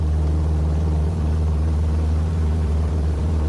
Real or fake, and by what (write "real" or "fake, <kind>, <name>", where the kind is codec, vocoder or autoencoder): fake, vocoder, BigVGAN v2